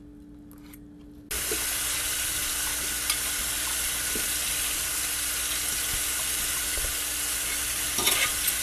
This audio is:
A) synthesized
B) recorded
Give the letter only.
B